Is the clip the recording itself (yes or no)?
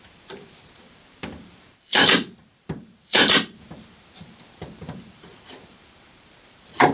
no